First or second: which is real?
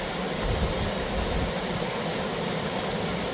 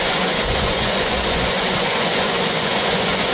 first